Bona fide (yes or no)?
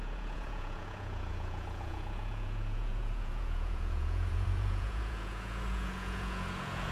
no